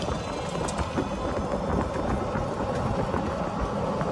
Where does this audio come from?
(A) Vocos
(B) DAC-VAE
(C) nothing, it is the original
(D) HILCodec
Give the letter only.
C